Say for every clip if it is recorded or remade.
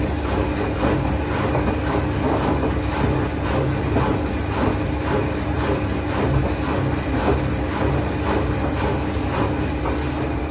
recorded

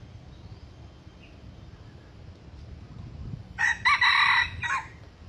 recorded